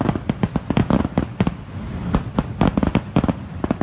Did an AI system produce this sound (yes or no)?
no